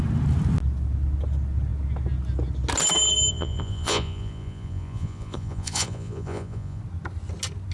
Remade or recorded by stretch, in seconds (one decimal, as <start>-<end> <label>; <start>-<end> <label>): 0.0-3.3 recorded; 3.3-6.8 remade; 6.8-7.7 recorded